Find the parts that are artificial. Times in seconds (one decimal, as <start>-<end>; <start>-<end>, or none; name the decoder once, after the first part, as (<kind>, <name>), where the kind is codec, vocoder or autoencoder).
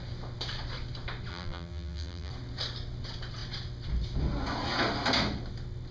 1.3-2.3 (vocoder, BigVGAN v2)